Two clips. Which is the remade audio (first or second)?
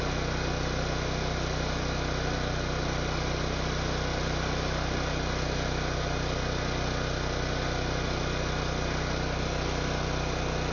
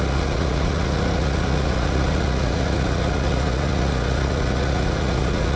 second